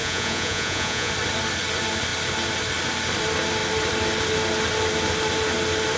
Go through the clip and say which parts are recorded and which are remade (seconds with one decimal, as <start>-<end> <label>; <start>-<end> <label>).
0.0-1.1 remade; 1.1-6.0 recorded